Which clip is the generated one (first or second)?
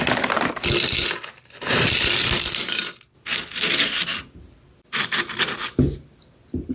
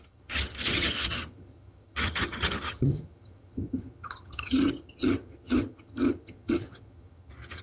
second